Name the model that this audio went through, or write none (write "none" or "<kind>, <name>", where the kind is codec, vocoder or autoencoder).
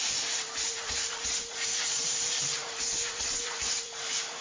vocoder, BigVGAN v2